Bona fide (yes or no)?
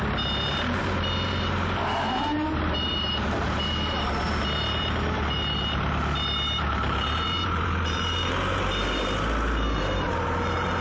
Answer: no